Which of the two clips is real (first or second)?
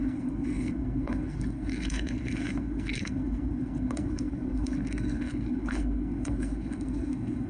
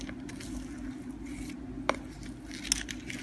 second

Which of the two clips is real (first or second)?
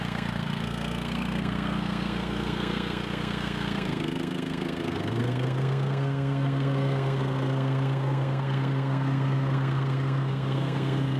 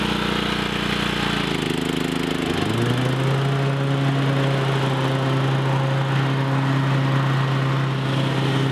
second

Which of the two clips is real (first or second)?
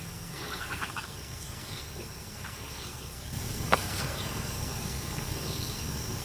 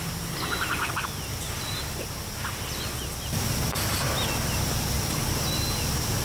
second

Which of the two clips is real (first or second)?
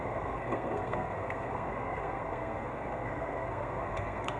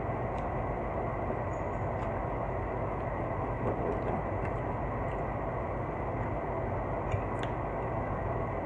second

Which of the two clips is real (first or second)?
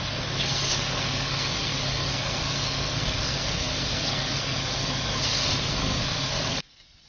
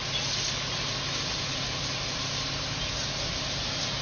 second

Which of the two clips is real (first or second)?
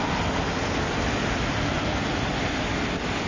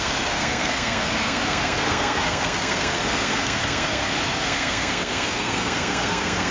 first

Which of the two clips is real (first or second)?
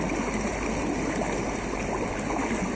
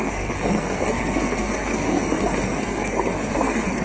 first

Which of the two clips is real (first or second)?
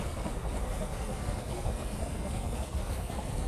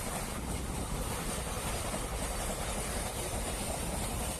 second